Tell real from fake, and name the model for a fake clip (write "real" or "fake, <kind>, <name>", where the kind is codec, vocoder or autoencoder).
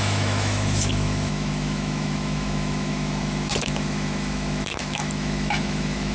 fake, autoencoder, DAC-VAE